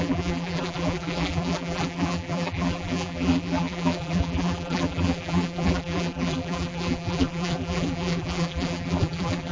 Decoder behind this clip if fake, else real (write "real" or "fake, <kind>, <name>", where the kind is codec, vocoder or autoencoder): fake, vocoder, BigVGAN v2